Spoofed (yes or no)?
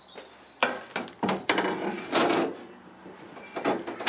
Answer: no